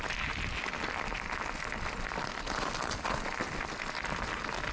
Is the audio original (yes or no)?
yes